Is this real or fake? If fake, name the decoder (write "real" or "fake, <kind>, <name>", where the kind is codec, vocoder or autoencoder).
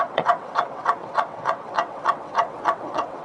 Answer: fake, vocoder, WaveNeXt